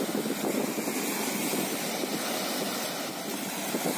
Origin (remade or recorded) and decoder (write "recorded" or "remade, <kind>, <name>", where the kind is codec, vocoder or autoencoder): recorded